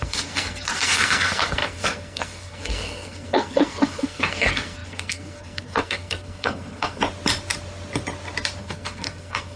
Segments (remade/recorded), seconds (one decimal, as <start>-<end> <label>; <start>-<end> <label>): 0.0-7.0 remade; 7.0-8.6 recorded; 8.6-9.6 remade